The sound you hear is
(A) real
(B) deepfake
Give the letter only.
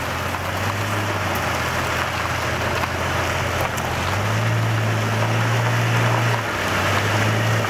A